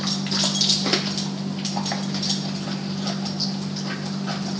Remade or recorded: recorded